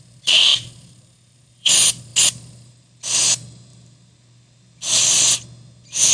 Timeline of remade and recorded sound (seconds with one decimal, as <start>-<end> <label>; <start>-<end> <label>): 0.0-0.5 recorded; 0.5-1.7 remade; 1.7-6.1 recorded